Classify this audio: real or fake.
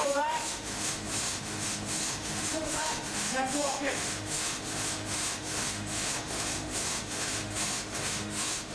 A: fake